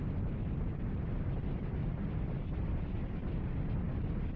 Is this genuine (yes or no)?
yes